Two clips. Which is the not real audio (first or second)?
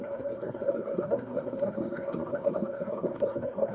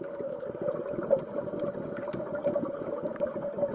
first